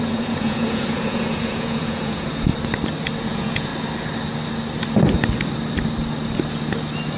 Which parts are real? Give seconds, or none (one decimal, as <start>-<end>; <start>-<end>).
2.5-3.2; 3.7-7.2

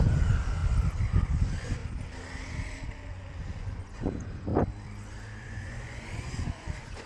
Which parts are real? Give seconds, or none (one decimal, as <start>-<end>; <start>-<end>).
0.6-1.3; 1.8-3.5; 4.5-5.4

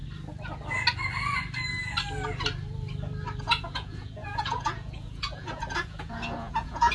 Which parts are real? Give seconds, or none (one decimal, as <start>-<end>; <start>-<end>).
0.0-3.4

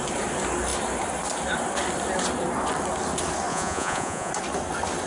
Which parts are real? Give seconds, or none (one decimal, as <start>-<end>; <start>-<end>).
0.0-3.5; 4.3-5.1

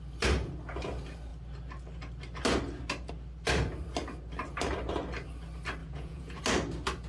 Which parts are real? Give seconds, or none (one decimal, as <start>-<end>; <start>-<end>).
0.0-5.8; 6.4-7.1

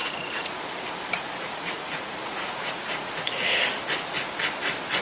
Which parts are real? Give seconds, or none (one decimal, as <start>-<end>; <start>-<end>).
0.6-1.2; 3.7-5.0